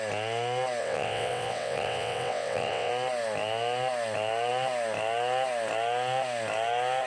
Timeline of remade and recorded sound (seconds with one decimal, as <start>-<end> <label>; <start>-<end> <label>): 0.0-0.8 recorded; 0.8-2.9 remade; 2.9-7.1 recorded